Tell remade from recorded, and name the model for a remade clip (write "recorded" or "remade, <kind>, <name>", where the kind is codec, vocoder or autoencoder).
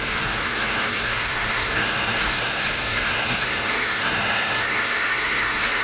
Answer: remade, codec, SNAC